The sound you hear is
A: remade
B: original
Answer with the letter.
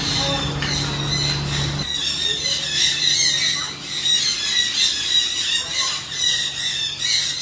B